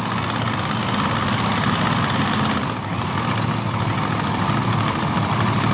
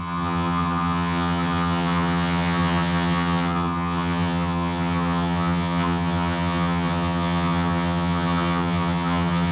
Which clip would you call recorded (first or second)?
first